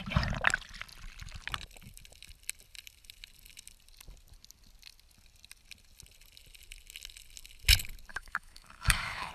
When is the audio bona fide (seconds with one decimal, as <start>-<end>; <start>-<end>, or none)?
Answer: 0.0-8.1